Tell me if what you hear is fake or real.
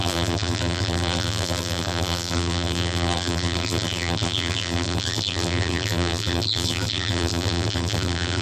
fake